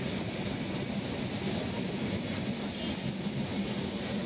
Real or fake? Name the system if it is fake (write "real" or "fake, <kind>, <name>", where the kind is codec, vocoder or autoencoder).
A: real